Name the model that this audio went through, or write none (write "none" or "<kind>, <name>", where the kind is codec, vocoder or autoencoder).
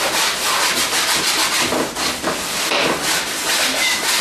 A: none